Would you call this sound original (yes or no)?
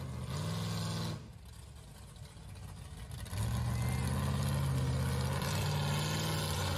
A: yes